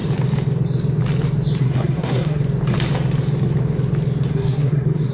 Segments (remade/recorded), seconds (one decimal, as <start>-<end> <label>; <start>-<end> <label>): 0.0-1.6 recorded; 1.6-2.4 remade; 2.4-4.3 recorded; 4.3-5.1 remade